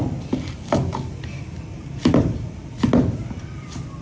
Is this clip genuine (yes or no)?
yes